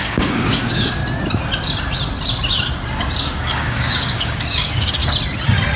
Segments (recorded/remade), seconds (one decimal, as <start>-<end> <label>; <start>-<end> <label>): 0.0-1.0 remade; 1.0-3.2 recorded; 3.2-5.0 remade; 5.0-5.8 recorded